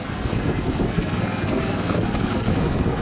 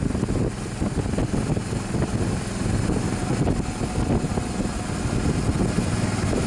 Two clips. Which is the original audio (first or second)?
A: second